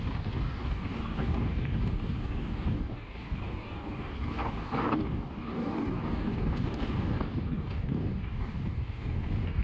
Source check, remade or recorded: remade